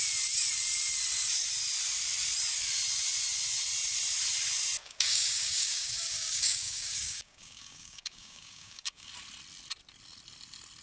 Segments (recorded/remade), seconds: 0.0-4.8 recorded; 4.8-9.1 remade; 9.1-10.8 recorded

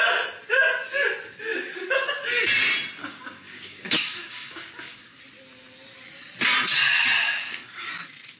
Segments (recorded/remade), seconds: 0.0-1.5 recorded; 1.5-2.1 remade; 2.1-3.0 recorded; 3.0-5.2 remade; 5.2-7.3 recorded; 7.3-7.9 remade; 7.9-8.4 recorded